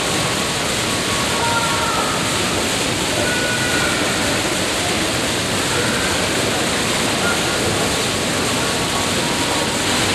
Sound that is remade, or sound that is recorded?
recorded